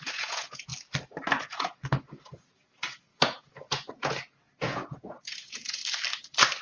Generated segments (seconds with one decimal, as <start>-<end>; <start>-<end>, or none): 0.0-0.7; 1.4-5.8